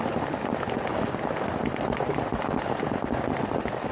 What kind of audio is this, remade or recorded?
recorded